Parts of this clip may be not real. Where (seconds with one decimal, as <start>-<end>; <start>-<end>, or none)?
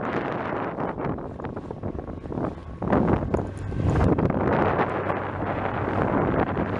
none